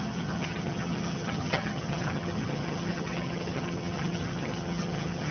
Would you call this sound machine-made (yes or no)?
yes